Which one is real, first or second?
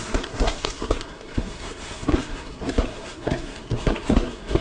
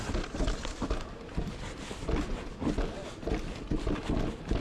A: second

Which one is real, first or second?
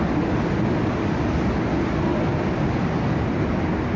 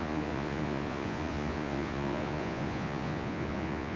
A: first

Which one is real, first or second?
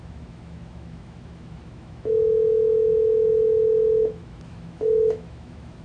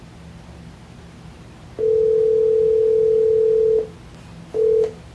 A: second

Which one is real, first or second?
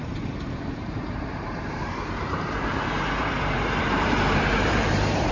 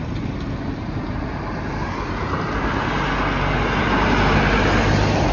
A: second